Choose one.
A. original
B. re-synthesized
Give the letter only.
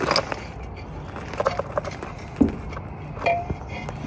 A